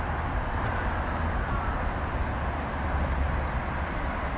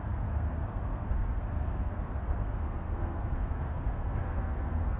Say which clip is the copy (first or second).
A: second